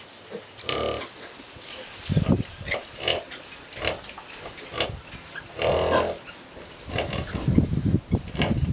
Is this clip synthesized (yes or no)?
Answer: no